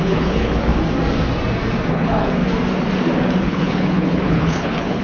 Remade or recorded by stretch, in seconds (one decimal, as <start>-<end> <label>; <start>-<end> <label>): 0.0-0.7 remade; 0.7-1.9 recorded; 1.9-2.4 remade; 2.4-3.4 recorded; 3.4-5.0 remade